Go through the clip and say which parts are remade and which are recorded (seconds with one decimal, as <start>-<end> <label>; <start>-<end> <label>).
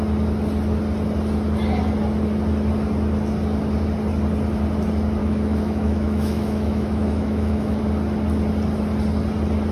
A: 0.0-5.2 recorded; 5.2-7.8 remade; 7.8-9.7 recorded